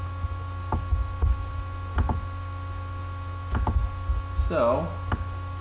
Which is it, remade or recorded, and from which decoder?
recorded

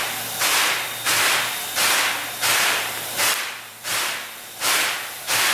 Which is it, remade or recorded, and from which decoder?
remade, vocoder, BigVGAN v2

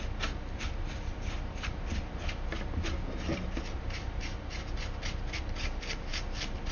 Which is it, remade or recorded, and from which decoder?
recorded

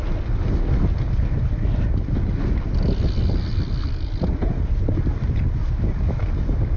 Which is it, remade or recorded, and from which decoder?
recorded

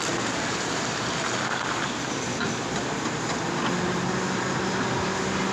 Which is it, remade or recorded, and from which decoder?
recorded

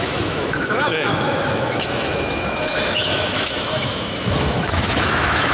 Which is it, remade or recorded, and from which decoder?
remade, autoencoder, DAC-VAE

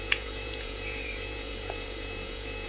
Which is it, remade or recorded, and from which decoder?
remade, vocoder, Vocos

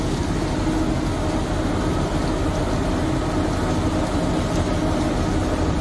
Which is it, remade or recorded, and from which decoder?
recorded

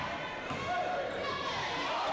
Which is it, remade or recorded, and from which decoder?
recorded